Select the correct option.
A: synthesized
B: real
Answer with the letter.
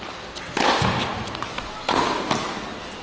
B